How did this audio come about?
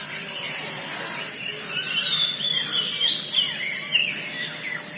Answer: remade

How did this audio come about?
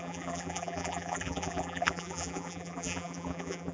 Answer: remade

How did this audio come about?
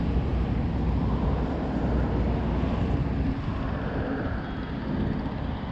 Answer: recorded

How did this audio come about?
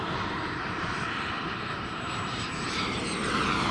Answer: remade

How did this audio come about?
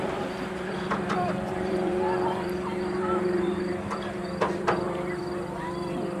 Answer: remade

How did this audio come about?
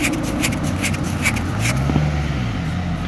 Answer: recorded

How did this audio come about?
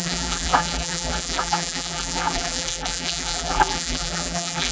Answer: remade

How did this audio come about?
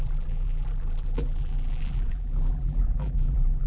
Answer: remade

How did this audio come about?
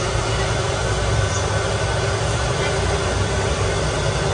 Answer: recorded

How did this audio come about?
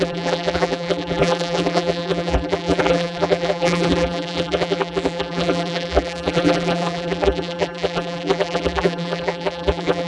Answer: remade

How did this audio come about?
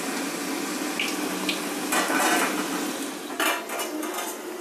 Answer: recorded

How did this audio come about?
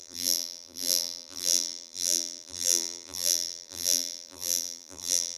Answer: remade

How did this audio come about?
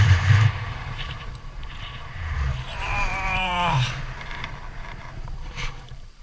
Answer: remade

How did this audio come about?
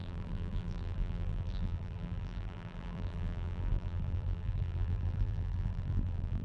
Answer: remade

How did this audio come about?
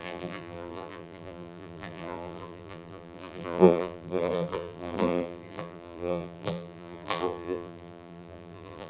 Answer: remade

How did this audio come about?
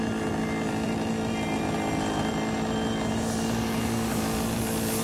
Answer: recorded